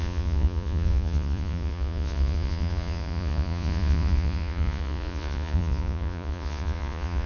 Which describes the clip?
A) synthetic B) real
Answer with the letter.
A